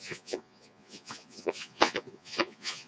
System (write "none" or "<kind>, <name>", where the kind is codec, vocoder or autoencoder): vocoder, Vocos